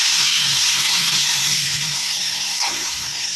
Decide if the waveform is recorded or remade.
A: remade